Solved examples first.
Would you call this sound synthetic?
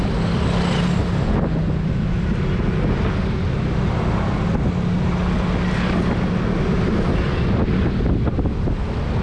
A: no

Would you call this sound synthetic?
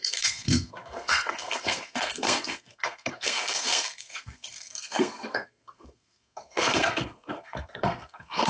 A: yes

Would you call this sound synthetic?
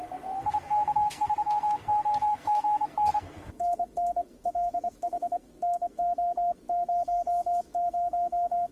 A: yes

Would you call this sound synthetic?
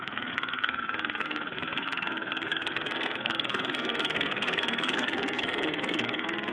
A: yes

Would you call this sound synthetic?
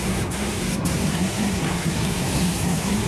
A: yes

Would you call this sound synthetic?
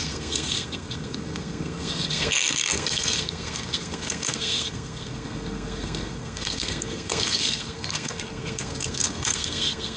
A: yes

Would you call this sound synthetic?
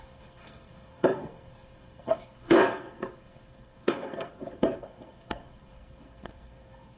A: yes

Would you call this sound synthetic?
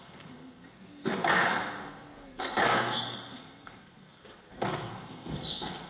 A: yes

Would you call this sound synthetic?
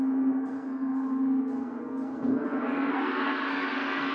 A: yes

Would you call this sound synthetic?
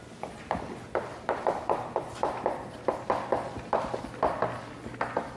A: no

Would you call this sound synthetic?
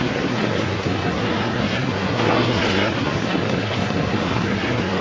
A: yes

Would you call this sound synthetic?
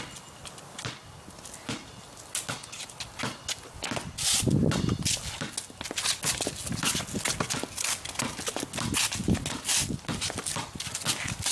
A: no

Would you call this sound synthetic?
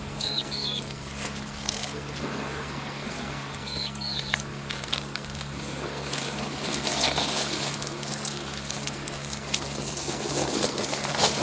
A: yes